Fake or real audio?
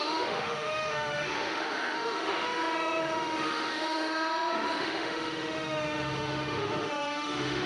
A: fake